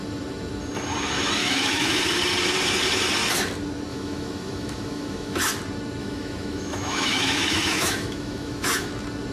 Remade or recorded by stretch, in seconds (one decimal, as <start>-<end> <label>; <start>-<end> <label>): 0.0-1.4 recorded; 1.4-2.2 remade; 2.2-3.9 recorded; 3.9-5.4 remade; 5.4-6.0 recorded; 6.0-8.9 remade; 8.9-9.3 recorded